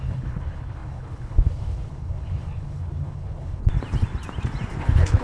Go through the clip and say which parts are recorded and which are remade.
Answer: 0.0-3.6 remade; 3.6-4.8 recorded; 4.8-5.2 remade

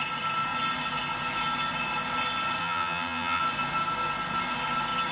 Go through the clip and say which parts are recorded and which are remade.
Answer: 0.0-2.6 recorded; 2.6-3.4 remade; 3.4-5.1 recorded

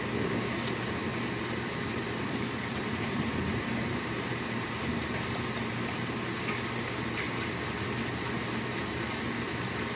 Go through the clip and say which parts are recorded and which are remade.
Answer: 0.0-2.9 recorded; 2.9-7.8 remade; 7.8-10.0 recorded

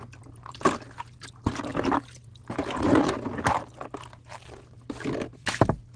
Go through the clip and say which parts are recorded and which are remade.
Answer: 0.0-6.0 recorded